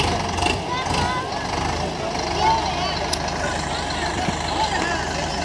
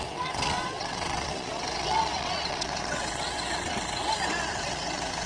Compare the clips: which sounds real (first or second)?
first